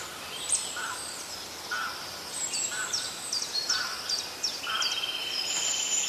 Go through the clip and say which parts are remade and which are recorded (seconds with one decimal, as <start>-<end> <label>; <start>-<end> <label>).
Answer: 0.0-6.1 recorded